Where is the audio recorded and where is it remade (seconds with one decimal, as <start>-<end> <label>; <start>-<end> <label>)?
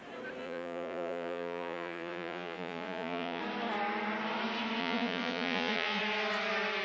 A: 0.0-0.4 recorded; 0.4-3.4 remade; 3.4-4.8 recorded; 4.8-6.0 remade; 6.0-6.8 recorded